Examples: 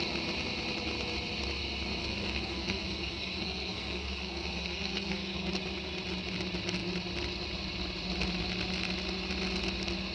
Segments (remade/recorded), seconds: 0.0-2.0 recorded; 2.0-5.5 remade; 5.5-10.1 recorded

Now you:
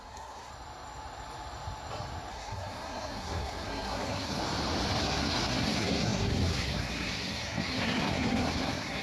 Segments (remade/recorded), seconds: 0.0-0.5 remade; 0.5-2.3 recorded; 2.3-4.4 remade; 4.4-5.0 recorded; 5.0-9.0 remade

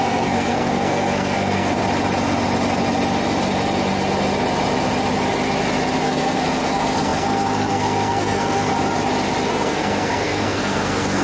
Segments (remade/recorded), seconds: 0.0-1.8 remade; 1.8-6.0 recorded; 6.0-8.7 remade; 8.7-9.5 recorded; 9.5-11.2 remade

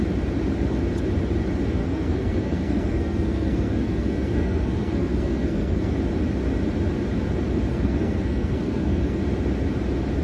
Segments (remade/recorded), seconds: 0.0-1.8 recorded; 1.8-5.9 remade; 5.9-7.7 recorded; 7.7-9.2 remade; 9.2-10.2 recorded